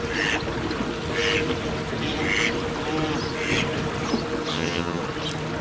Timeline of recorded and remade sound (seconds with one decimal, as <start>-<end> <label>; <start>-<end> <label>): 0.0-4.5 recorded; 4.5-5.0 remade; 5.0-5.6 recorded